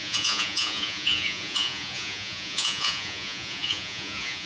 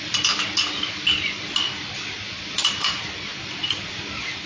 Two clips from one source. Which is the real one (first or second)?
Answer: second